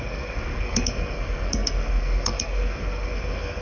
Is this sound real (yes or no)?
no